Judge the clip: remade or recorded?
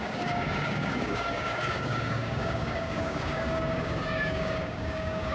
remade